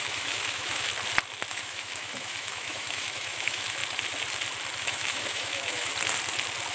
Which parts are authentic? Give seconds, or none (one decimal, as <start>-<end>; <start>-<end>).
0.9-1.5; 3.8-4.8; 5.9-6.7